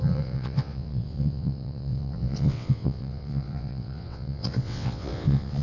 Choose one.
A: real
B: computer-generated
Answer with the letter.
B